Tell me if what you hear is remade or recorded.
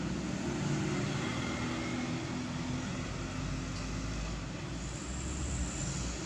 recorded